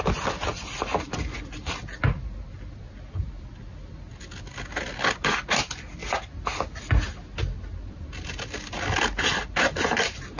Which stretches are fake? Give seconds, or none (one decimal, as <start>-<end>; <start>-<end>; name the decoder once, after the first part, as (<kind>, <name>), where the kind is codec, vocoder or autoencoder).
none